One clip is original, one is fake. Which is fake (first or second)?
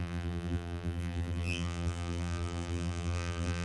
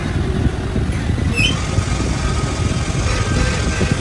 first